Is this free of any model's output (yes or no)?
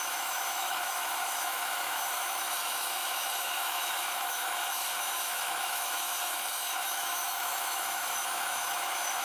no